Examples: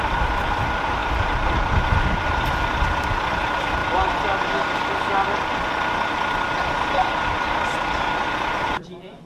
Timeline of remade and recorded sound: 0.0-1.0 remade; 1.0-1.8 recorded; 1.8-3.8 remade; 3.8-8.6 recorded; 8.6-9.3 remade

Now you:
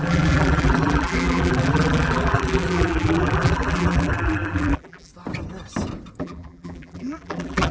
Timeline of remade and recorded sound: 0.0-5.1 remade; 5.1-6.2 recorded; 6.2-7.7 remade